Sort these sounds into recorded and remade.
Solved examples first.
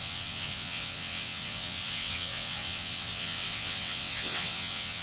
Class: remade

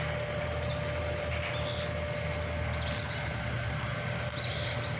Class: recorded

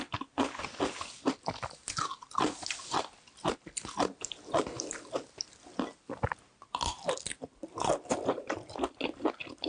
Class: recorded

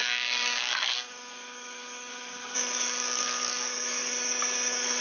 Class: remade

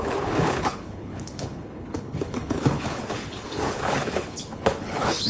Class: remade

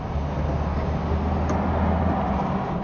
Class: recorded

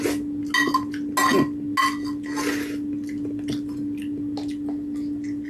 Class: recorded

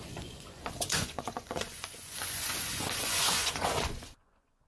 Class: remade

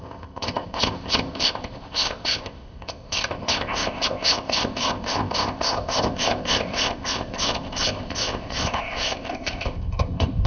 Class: remade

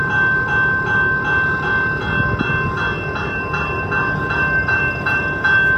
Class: recorded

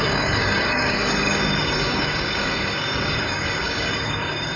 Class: remade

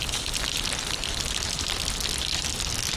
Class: recorded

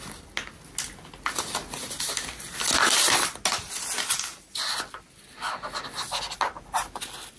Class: recorded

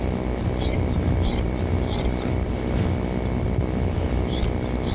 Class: recorded